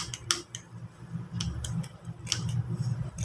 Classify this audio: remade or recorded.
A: recorded